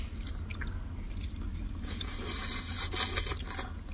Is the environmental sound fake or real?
real